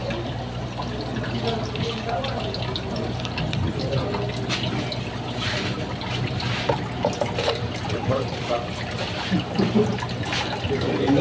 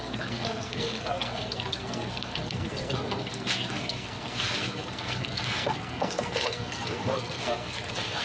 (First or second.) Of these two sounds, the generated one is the second